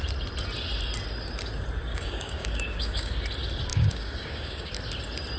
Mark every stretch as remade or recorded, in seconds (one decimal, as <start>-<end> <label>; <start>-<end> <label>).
0.0-1.9 recorded; 1.9-3.2 remade; 3.2-3.7 recorded; 3.7-4.7 remade; 4.7-5.4 recorded